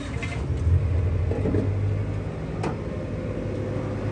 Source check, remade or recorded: recorded